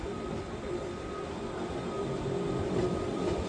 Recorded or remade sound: recorded